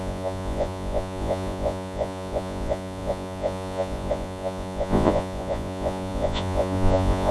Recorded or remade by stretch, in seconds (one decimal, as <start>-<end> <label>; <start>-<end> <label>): 0.0-7.3 remade